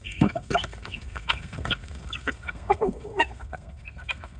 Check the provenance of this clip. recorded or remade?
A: remade